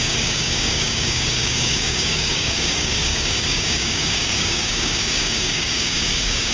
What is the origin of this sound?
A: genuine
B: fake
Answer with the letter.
B